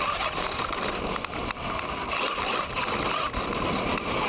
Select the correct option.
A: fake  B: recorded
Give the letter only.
B